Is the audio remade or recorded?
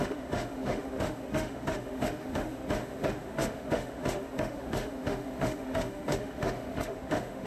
remade